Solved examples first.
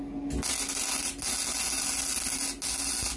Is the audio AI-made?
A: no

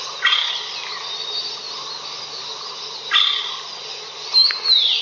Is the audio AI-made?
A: no